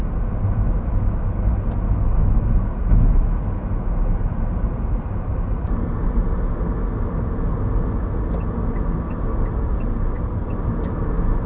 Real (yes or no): yes